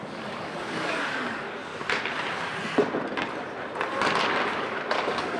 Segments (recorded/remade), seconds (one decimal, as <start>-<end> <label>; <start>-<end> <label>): 0.0-1.7 remade; 1.7-4.9 recorded; 4.9-5.4 remade